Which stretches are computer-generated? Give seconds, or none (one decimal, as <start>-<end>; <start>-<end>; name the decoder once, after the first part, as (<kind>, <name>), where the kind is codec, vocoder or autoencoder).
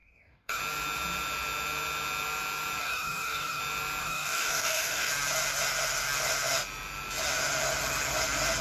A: 0.0-0.6 (codec, DAC); 2.8-3.6; 4.0-5.1